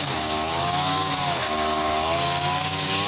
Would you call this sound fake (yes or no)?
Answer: yes